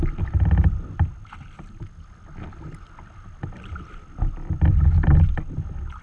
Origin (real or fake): real